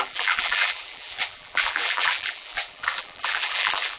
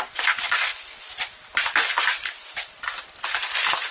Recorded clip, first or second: second